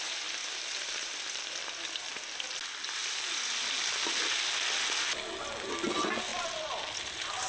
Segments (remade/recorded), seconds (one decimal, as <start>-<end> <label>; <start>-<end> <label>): 0.0-0.4 recorded; 0.4-1.6 remade; 1.6-7.5 recorded